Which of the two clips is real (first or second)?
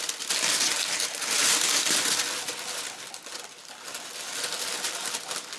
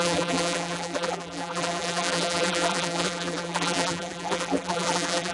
first